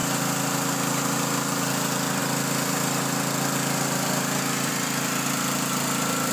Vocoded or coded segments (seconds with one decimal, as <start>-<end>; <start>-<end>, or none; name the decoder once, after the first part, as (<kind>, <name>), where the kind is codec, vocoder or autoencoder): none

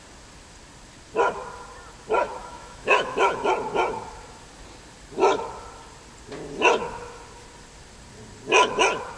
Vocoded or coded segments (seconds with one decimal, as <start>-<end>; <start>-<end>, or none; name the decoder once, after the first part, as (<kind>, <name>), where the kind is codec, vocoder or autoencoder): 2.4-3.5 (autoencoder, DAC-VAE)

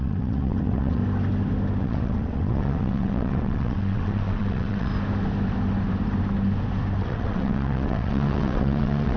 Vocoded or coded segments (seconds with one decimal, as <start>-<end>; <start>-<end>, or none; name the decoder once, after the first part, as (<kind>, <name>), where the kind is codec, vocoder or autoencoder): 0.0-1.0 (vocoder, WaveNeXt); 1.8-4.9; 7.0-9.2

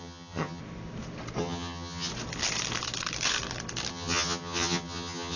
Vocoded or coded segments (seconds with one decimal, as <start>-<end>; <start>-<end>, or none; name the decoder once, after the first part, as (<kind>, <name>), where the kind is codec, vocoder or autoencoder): 0.0-0.6 (vocoder, HiFi-GAN); 1.4-2.1; 3.9-5.4

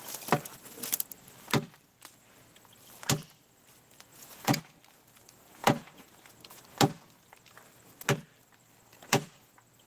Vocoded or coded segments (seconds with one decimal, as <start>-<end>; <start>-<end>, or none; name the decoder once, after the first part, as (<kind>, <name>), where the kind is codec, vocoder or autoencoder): 4.1-4.6 (vocoder, Vocos); 5.6-6.6; 8.9-9.5